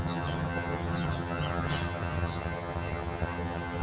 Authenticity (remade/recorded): remade